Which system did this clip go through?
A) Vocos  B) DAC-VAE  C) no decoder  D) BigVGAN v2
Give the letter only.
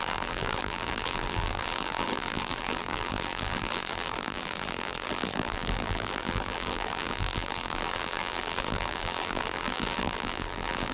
D